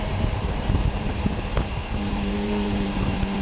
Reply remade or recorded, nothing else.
remade